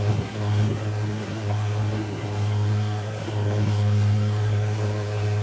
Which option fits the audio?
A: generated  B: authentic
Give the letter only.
A